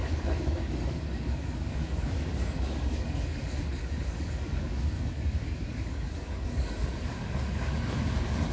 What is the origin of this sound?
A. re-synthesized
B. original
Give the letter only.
A